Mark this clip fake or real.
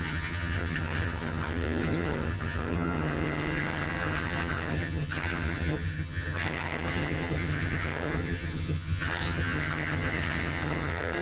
fake